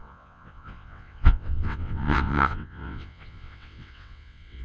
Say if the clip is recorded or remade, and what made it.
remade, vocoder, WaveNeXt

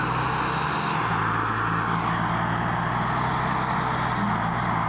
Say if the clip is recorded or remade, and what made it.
recorded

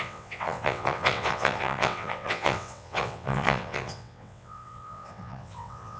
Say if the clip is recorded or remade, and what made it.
remade, vocoder, WaveNeXt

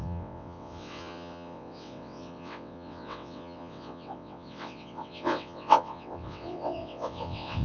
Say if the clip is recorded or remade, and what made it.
remade, vocoder, WaveNeXt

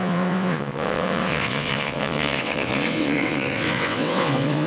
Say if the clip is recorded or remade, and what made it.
remade, vocoder, WaveNeXt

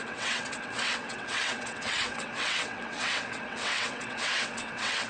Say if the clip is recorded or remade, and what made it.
remade, vocoder, WaveNeXt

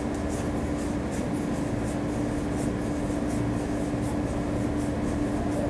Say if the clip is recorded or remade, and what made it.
recorded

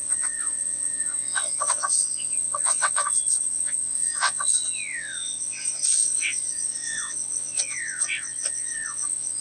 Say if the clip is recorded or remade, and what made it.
remade, vocoder, WaveNeXt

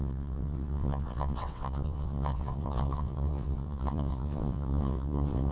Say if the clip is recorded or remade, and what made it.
remade, vocoder, WaveNeXt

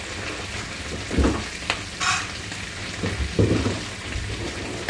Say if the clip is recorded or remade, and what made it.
recorded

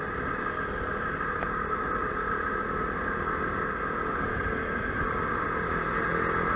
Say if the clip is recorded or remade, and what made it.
recorded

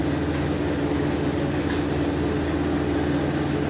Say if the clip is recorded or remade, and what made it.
recorded